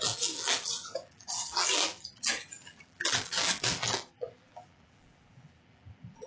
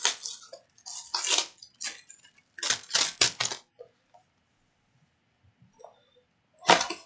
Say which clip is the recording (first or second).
second